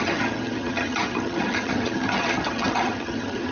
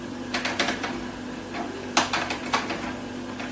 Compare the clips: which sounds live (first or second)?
second